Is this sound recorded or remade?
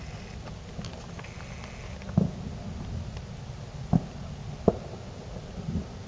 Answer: recorded